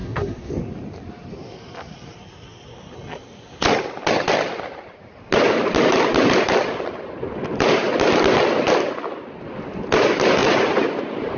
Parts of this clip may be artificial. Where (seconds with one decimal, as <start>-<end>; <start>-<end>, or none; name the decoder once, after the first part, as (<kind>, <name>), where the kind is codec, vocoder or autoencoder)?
0.0-0.5 (codec, SNAC)